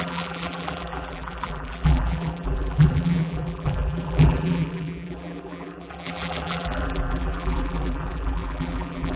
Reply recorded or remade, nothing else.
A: remade